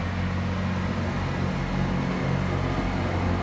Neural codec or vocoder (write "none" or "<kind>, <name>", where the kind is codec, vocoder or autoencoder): none